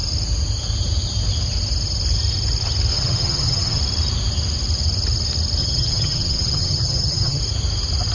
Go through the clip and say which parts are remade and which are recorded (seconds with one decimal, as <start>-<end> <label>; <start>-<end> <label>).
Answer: 0.0-2.9 recorded; 2.9-3.8 remade; 3.8-5.6 recorded; 5.6-7.4 remade; 7.4-8.1 recorded